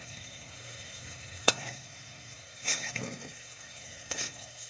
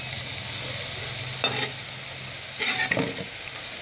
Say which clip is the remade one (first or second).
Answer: first